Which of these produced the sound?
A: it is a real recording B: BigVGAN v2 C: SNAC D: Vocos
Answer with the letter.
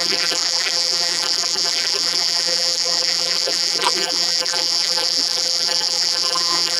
B